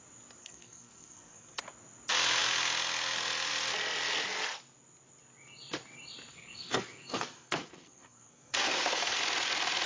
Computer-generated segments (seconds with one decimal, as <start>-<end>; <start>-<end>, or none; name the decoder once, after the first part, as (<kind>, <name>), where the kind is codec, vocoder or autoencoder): 0.4-1.6 (codec, SNAC); 6.3-9.2